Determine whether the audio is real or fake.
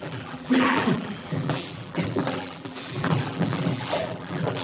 fake